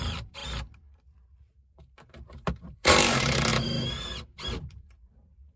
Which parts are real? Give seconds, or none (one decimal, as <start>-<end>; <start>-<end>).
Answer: 0.4-0.9; 3.5-4.6